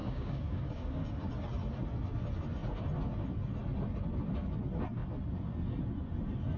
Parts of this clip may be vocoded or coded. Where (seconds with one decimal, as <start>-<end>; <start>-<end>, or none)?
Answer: 0.0-1.3